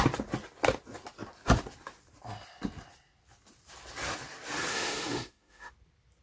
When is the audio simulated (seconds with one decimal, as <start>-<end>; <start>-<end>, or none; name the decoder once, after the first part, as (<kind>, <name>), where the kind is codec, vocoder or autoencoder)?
4.7-5.7 (autoencoder, DAC-VAE)